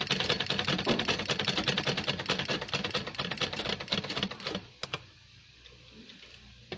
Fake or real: real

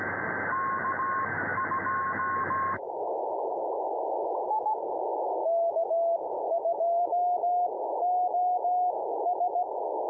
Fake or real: real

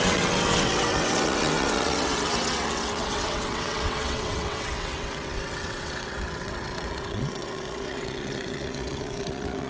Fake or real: fake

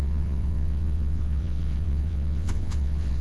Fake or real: fake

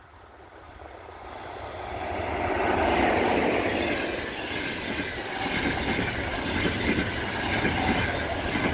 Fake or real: real